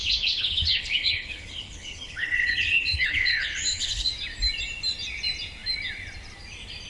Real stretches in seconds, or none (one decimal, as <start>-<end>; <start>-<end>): 4.1-6.9